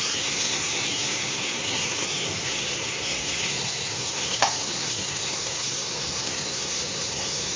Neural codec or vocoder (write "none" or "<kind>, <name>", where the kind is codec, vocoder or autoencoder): codec, SNAC